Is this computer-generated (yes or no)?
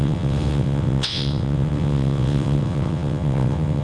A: yes